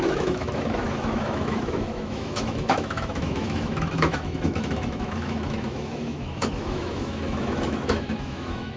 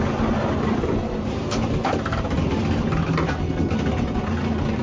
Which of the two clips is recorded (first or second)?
second